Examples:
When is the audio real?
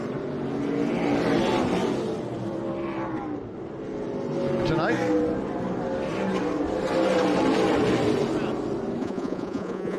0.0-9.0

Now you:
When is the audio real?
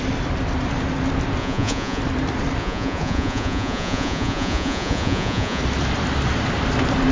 0.0-1.4; 2.0-2.6; 5.6-7.1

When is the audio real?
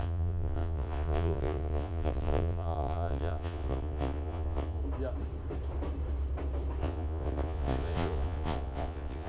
4.8-6.8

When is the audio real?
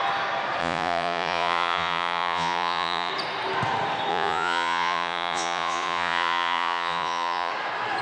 0.0-0.6; 3.1-4.1; 7.5-8.0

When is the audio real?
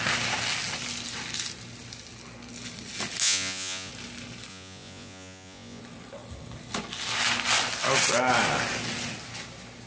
0.0-3.2; 3.9-4.5; 5.8-9.9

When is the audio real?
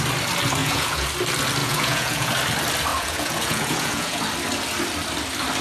0.0-0.6; 1.1-1.6; 2.3-2.9; 4.2-5.6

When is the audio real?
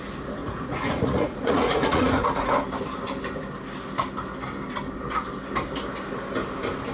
0.0-0.4; 2.5-6.9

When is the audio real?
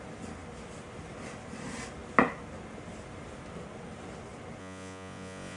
0.0-4.6